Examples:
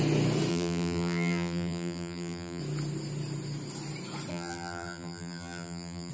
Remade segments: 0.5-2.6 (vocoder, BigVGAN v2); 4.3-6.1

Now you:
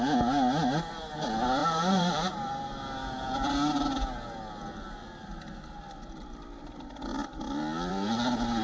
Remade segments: 1.6-2.3 (vocoder, BigVGAN v2)

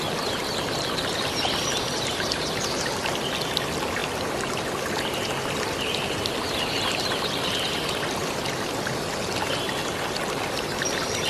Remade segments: 0.0-4.0 (vocoder, BigVGAN v2); 5.5-9.8; 10.5-11.3

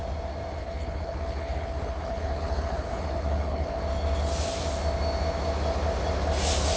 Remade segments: 0.6-3.8 (codec, HILCodec)

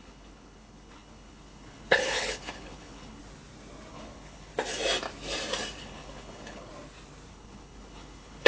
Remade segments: 0.0-3.2 (codec, HILCodec); 3.9-4.5; 5.8-6.7; 7.3-8.5